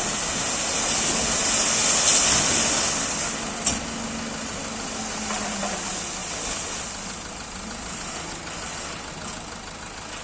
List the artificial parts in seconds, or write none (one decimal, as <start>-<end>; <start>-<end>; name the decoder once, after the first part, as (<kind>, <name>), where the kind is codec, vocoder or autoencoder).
none